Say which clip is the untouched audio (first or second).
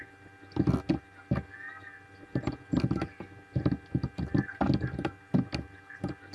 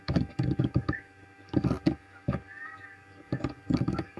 first